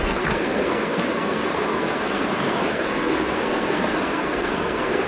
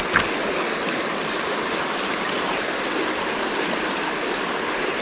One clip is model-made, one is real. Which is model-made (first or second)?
first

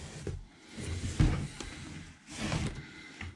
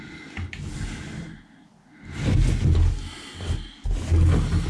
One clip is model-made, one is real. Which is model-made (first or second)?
first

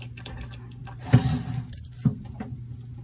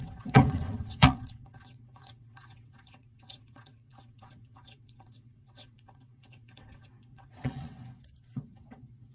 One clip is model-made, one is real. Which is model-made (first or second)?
second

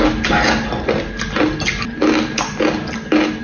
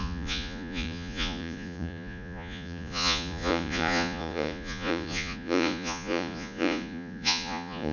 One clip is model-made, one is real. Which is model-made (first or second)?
second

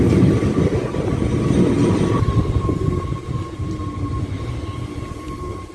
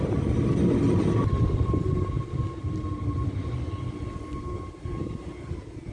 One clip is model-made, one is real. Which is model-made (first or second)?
first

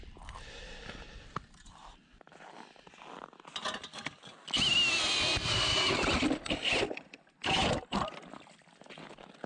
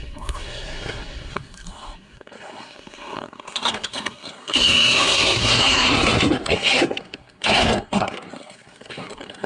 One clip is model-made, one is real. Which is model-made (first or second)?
second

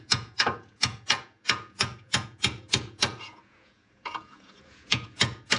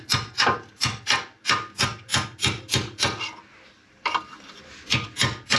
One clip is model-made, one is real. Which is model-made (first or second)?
first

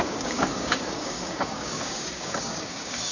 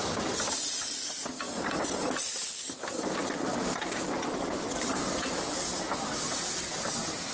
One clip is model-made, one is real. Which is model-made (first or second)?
first